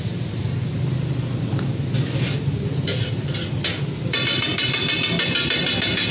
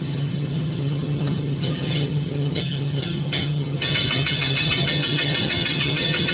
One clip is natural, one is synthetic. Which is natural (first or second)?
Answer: first